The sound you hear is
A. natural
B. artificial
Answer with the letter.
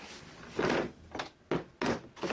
A